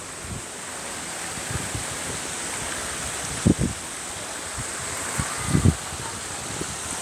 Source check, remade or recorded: recorded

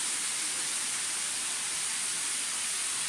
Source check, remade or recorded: recorded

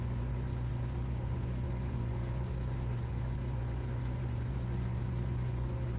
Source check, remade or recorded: remade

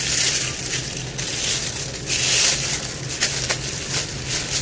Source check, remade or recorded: recorded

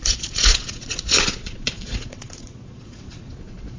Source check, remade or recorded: remade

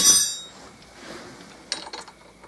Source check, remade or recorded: recorded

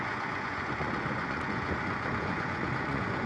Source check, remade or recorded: remade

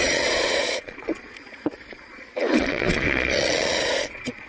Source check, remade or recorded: remade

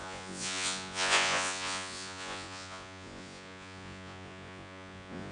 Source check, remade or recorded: remade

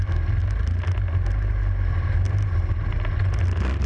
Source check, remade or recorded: recorded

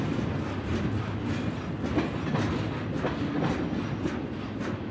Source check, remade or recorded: recorded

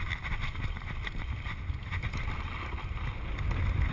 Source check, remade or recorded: recorded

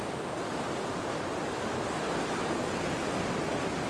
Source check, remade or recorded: recorded